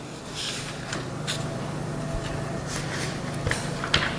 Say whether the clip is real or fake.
real